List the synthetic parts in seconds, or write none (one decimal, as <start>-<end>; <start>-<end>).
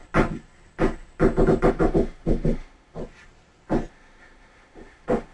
1.7-3.0; 3.9-5.3